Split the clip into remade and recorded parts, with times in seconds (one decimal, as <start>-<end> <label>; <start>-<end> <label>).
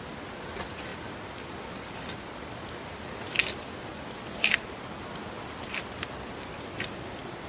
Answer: 0.0-7.5 recorded